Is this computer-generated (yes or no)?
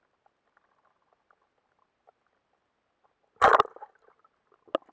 no